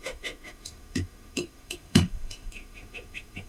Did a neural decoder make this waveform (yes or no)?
yes